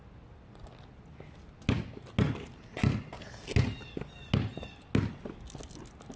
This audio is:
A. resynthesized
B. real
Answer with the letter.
B